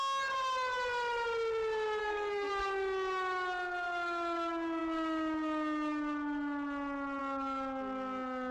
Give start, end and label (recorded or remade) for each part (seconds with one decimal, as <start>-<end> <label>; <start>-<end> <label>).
0.0-2.0 recorded; 2.0-2.5 remade; 2.5-8.5 recorded